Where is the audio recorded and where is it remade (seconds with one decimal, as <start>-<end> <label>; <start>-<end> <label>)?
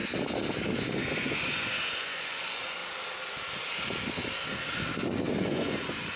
0.0-0.9 recorded; 0.9-2.8 remade; 2.8-5.4 recorded; 5.4-6.2 remade